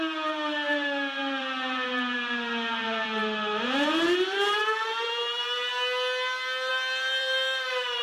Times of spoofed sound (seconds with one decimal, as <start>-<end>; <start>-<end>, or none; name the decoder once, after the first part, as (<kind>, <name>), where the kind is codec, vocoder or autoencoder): 0.0-5.7 (vocoder, BigVGAN v2); 6.7-8.0